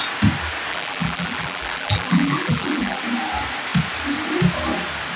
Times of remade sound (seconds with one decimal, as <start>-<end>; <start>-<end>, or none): 0.7-3.0